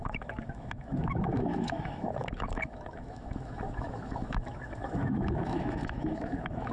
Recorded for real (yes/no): no